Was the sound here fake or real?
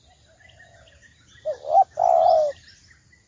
real